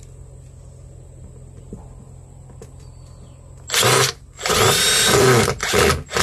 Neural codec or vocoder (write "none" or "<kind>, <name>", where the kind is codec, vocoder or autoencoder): none